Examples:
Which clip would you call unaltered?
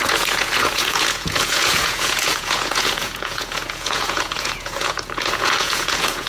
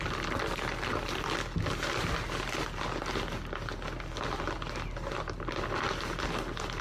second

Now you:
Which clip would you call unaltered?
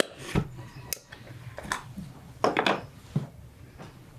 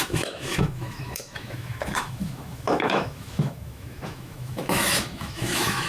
first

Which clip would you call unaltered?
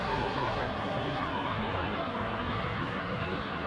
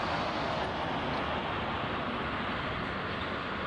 second